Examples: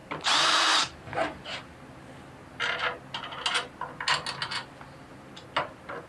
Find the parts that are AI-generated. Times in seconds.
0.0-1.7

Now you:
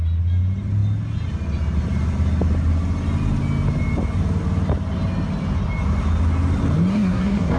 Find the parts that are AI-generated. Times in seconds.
6.9-7.6

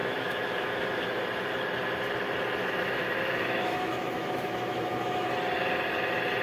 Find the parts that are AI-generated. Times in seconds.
0.0-1.2; 2.6-5.3